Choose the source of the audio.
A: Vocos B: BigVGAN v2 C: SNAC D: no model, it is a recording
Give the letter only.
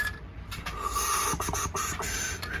D